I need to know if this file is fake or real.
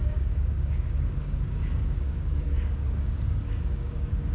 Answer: fake